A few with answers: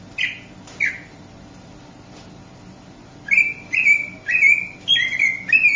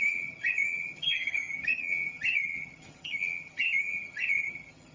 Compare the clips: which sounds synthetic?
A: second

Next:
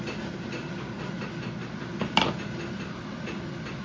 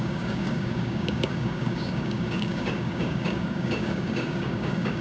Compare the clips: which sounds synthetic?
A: second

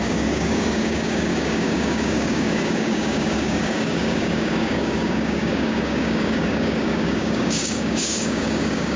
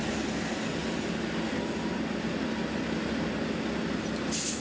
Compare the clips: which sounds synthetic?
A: first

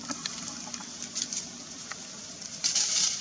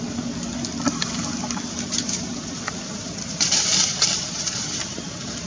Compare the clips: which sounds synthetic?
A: second